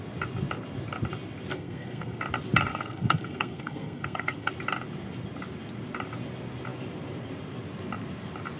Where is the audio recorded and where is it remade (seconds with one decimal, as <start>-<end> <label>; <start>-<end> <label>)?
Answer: 0.0-1.5 recorded; 1.5-2.2 remade; 2.2-2.7 recorded; 2.7-4.5 remade; 4.5-8.6 recorded